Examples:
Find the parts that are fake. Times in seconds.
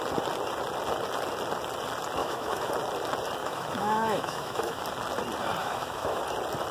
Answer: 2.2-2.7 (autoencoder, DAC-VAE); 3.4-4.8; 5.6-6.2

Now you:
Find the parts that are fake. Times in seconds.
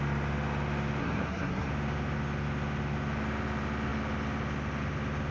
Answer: 1.0-1.7 (codec, SNAC)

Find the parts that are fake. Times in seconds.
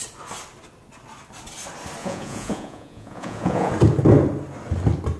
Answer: 2.0-3.7 (vocoder, Vocos)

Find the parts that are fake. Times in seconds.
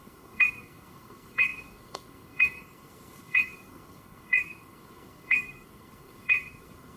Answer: 0.0-7.0 (codec, SNAC)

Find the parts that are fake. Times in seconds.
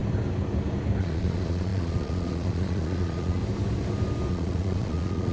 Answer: 1.0-3.4 (vocoder, Vocos); 4.3-5.3